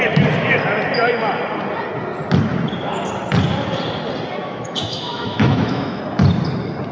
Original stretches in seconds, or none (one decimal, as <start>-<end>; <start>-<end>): 0.0-4.4; 6.0-6.9